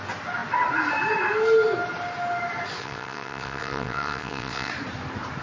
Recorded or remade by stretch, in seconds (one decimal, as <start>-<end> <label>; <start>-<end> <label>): 0.0-2.8 recorded; 2.8-4.7 remade; 4.7-5.4 recorded